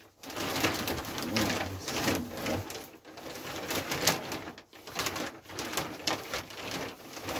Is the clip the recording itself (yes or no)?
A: yes